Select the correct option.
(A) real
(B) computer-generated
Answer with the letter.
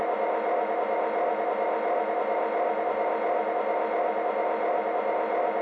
A